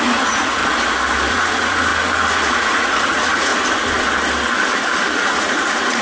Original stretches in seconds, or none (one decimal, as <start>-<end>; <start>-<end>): 0.6-1.3; 1.9-2.5; 3.5-5.2